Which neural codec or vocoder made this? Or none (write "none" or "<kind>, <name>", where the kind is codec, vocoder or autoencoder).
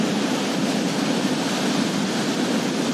none